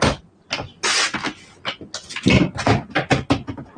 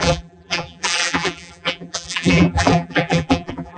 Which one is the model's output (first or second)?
second